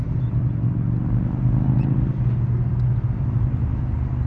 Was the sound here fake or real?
real